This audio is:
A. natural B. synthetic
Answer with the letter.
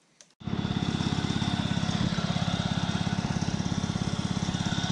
A